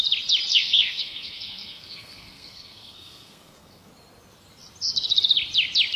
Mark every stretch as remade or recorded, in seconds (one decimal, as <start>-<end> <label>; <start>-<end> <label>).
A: 0.0-0.5 recorded; 0.5-3.9 remade; 3.9-6.0 recorded